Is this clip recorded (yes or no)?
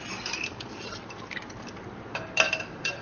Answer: no